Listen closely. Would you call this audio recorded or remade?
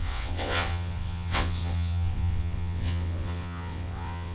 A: remade